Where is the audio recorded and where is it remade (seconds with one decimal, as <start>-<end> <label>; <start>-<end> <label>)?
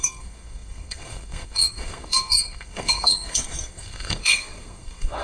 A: 0.0-5.2 remade